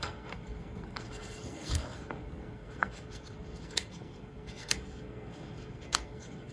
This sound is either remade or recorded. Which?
remade